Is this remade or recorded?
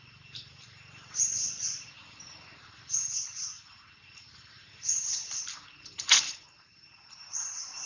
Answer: remade